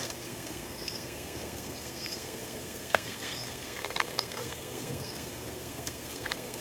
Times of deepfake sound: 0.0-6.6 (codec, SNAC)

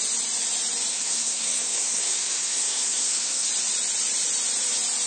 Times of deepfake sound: 0.9-3.5 (codec, SNAC)

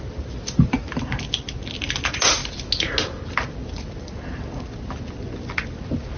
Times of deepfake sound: none

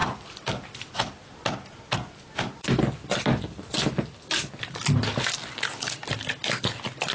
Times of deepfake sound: none

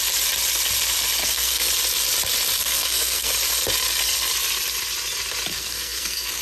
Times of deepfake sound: 1.2-1.7 (codec, SNAC); 2.6-3.3; 5.5-6.4

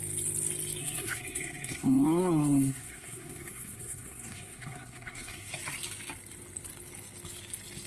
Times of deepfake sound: 0.8-5.5 (codec, SNAC)

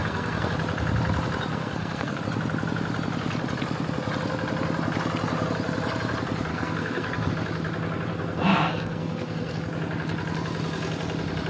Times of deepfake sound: 0.0-0.5 (codec, SNAC); 1.5-2.2; 6.5-7.3; 8.1-9.6